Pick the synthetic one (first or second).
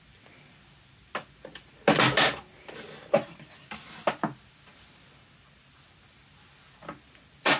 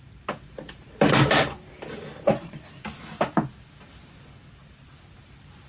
second